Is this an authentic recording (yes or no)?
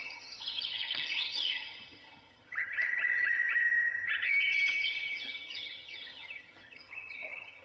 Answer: no